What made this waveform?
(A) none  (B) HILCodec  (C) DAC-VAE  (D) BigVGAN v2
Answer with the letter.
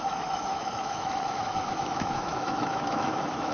C